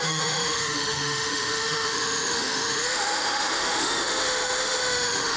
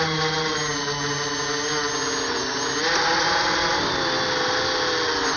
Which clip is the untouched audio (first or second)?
second